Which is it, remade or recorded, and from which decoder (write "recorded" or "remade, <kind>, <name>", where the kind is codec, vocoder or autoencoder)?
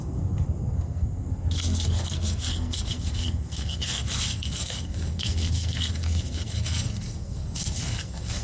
remade, codec, SNAC